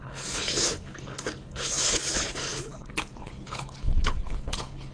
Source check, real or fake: fake